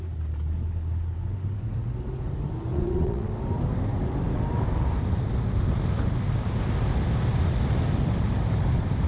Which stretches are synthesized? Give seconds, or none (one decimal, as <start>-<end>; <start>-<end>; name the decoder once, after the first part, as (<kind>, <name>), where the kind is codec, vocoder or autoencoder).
2.7-3.3 (vocoder, WaveNeXt)